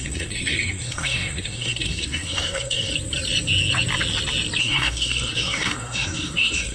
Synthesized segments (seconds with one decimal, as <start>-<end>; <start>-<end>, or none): 0.0-2.9; 4.6-6.7